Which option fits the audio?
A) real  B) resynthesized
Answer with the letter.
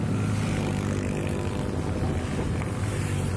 A